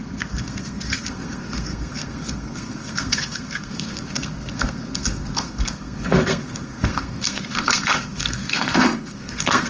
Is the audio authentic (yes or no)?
no